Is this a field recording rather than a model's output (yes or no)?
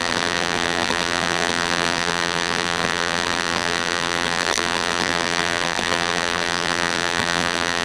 no